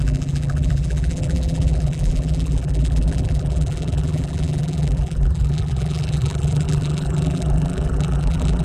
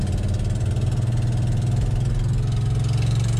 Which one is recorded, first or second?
second